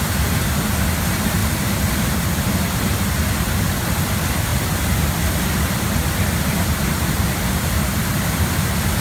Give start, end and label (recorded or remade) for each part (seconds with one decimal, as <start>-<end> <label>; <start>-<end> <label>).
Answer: 0.0-1.4 recorded; 1.4-1.9 remade; 1.9-9.0 recorded